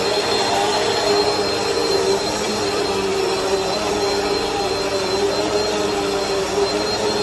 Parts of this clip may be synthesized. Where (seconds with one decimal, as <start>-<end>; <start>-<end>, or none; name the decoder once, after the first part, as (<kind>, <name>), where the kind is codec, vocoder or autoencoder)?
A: 1.8-2.5 (vocoder, BigVGAN v2)